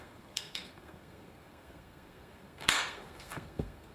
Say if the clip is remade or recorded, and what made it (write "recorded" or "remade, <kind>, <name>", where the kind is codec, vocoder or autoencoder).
remade, codec, SNAC